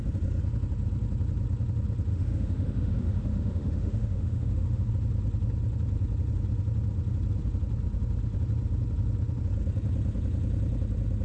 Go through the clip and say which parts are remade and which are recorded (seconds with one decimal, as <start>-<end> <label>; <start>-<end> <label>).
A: 0.0-2.1 recorded; 2.1-4.9 remade; 4.9-11.2 recorded